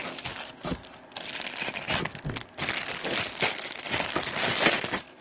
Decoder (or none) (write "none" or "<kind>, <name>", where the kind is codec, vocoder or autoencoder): none